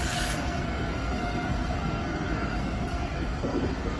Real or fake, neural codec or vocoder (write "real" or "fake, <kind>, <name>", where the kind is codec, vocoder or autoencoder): fake, codec, SNAC